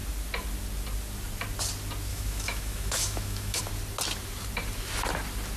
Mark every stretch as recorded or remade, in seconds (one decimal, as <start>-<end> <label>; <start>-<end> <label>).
0.0-2.1 recorded; 2.1-3.6 remade; 3.6-5.6 recorded